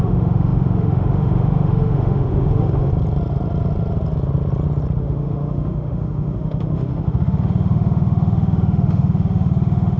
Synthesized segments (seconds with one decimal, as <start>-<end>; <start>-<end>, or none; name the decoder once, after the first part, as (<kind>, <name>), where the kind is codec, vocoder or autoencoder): 0.0-2.9 (autoencoder, DAC-VAE); 5.0-10.0